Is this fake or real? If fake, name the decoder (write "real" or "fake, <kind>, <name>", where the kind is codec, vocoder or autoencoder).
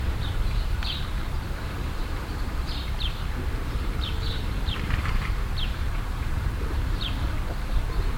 fake, vocoder, BigVGAN v2